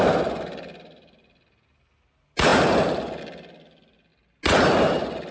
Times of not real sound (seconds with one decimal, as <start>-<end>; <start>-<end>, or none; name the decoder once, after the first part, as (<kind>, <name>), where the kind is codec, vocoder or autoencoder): none